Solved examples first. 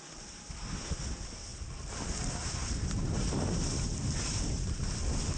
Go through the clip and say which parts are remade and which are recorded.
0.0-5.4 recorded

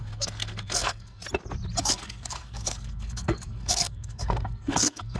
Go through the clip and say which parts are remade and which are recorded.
0.0-1.2 remade; 1.2-1.8 recorded; 1.8-5.2 remade

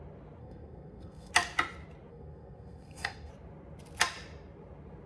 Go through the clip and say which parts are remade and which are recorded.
0.0-0.4 recorded; 0.4-1.3 remade; 1.3-2.1 recorded; 2.1-3.3 remade; 3.3-5.1 recorded